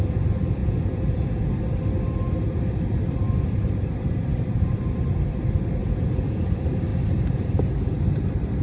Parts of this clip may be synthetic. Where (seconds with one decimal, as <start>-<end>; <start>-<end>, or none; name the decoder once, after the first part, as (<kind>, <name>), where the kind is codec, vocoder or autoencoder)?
0.6-1.5 (vocoder, Vocos); 5.8-6.5